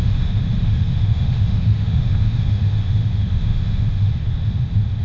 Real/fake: fake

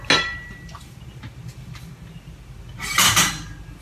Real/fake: real